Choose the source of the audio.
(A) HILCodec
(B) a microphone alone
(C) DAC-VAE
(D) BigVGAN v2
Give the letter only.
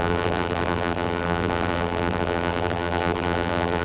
D